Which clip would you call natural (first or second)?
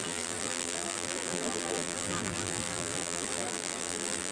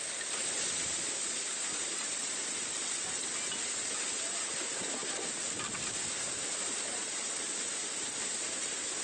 second